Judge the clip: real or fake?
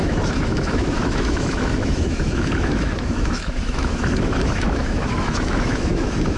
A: fake